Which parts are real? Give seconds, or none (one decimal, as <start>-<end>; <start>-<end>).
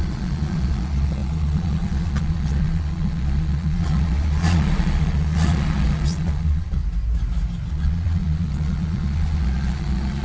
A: 6.8-7.7